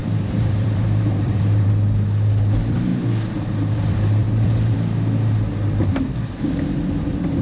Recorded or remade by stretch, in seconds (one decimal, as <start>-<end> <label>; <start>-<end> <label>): 0.0-1.7 remade; 1.7-7.4 recorded